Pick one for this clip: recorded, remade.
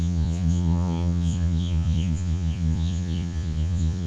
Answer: remade